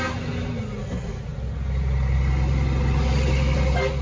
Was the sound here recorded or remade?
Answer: recorded